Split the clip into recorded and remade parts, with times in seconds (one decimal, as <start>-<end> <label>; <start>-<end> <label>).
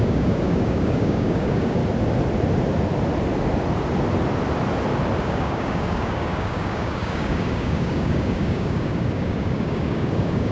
0.0-1.8 remade; 1.8-5.2 recorded; 5.2-10.5 remade